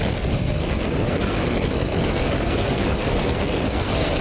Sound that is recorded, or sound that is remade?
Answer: remade